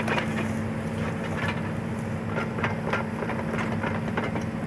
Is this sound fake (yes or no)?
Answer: no